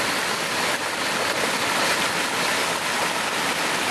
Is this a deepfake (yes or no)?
no